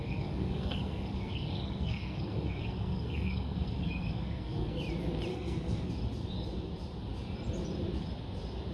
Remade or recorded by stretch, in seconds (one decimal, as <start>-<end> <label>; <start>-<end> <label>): 0.0-4.8 remade; 4.8-5.3 recorded; 5.3-5.9 remade; 5.9-8.7 recorded

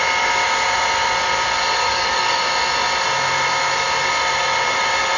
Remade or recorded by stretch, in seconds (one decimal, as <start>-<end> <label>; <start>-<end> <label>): 0.0-1.8 recorded; 1.8-2.4 remade; 2.4-5.2 recorded

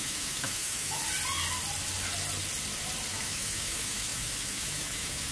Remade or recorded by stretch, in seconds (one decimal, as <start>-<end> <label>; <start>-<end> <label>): 0.0-1.0 remade; 1.0-3.1 recorded; 3.1-5.3 remade

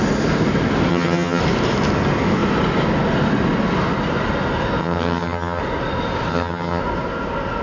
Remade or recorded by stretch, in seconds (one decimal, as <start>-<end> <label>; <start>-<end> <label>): 0.0-0.9 recorded; 0.9-1.4 remade; 1.4-4.8 recorded; 4.8-5.6 remade; 5.6-6.3 recorded; 6.3-6.8 remade; 6.8-7.6 recorded

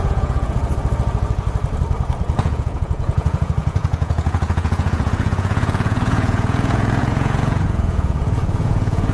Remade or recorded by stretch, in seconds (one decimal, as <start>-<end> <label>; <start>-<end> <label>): 0.0-0.6 remade; 0.6-2.4 recorded; 2.4-9.1 remade

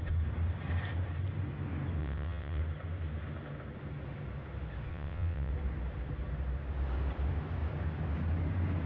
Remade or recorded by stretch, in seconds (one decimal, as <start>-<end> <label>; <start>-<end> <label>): 0.0-2.0 recorded; 2.0-2.6 remade; 2.6-4.9 recorded; 4.9-5.5 remade; 5.5-8.9 recorded

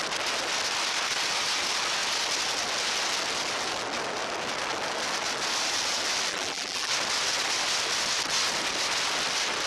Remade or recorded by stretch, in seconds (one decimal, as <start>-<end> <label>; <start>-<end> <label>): 0.0-6.3 recorded; 6.3-6.9 remade; 6.9-9.7 recorded

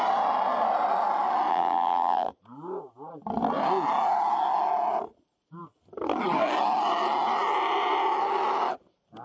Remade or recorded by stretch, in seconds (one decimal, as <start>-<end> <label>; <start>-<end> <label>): 0.0-1.5 recorded; 1.5-2.3 remade; 2.3-9.2 recorded